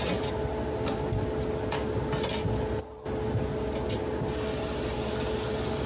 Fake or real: real